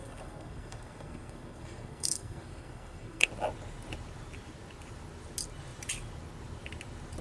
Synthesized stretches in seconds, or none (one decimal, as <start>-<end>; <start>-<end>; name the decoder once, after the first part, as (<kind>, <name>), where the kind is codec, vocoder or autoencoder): 0.0-3.3 (codec, SNAC)